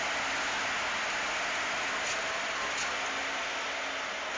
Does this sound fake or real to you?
real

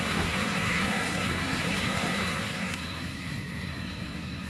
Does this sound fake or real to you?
fake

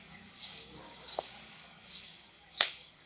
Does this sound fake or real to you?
fake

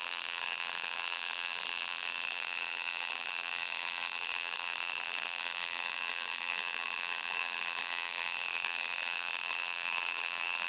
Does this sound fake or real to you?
fake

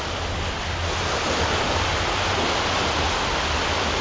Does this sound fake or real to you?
real